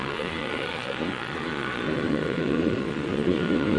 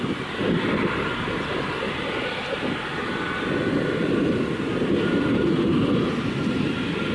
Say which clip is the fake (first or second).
first